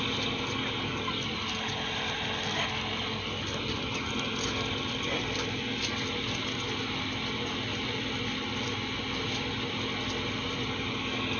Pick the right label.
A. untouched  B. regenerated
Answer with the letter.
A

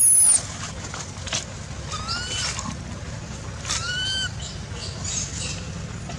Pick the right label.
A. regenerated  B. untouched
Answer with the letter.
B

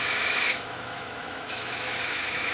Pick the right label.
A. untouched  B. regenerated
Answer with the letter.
B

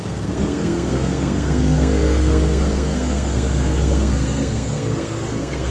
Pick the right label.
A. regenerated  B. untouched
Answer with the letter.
A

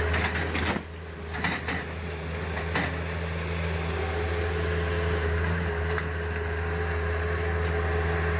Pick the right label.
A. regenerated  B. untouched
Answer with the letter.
B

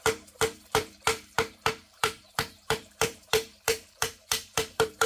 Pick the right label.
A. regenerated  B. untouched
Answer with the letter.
A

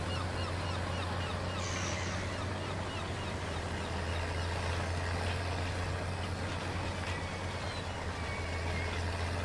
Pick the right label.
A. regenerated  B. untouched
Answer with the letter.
B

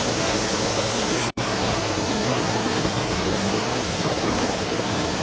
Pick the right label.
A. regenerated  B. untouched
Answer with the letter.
A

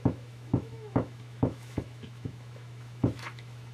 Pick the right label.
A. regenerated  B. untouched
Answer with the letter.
A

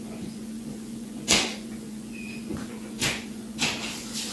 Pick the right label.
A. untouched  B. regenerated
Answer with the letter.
B